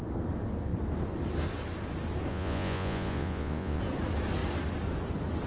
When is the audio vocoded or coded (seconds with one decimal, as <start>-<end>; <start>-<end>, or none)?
2.3-3.8